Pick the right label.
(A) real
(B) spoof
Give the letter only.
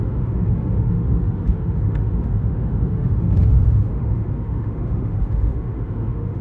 B